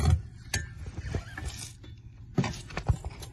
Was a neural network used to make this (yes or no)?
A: no